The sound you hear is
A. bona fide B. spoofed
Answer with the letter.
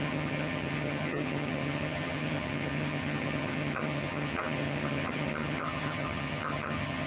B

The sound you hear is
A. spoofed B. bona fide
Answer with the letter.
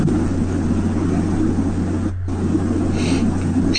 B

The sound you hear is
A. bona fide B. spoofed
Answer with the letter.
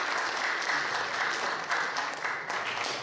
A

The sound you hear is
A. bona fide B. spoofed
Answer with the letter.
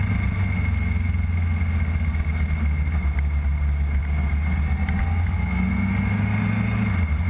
A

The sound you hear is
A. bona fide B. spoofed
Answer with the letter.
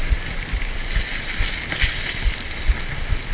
A